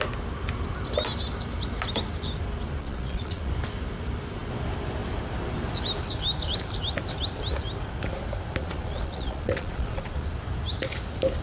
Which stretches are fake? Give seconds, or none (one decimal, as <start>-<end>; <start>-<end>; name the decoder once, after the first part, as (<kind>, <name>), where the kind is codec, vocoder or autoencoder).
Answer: 2.8-3.5 (vocoder, Vocos); 8.6-10.3